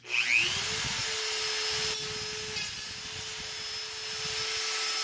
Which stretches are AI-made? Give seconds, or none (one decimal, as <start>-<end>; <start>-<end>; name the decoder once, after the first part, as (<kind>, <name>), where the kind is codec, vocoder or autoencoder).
none

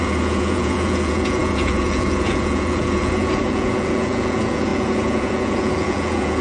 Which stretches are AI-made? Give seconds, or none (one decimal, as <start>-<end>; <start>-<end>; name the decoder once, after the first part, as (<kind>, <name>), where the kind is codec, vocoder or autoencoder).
0.0-6.4 (vocoder, Vocos)